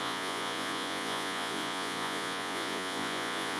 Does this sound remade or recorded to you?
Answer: remade